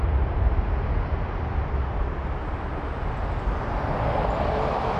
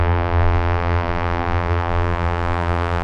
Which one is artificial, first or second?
second